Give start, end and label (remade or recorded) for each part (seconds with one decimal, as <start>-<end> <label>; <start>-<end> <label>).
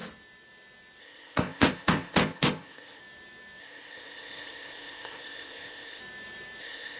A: 0.0-1.0 recorded; 1.0-3.0 remade; 3.0-3.6 recorded; 3.6-6.0 remade; 6.0-6.6 recorded; 6.6-7.0 remade